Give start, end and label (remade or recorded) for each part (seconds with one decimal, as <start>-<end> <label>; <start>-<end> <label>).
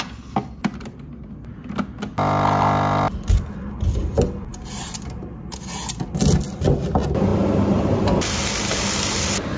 0.0-9.6 recorded